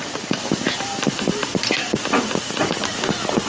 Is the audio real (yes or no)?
yes